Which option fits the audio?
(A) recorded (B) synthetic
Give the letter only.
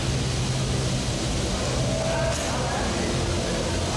A